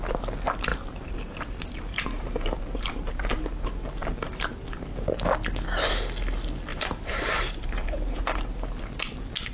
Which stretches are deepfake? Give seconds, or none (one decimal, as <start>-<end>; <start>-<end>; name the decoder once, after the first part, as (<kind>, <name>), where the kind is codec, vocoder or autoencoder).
0.7-3.4 (vocoder, BigVGAN v2); 6.7-8.2